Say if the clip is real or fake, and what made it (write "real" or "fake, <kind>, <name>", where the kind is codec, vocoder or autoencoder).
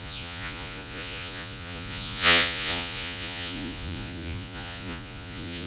fake, vocoder, Vocos